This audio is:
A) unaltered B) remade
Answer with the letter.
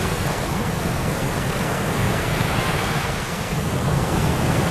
B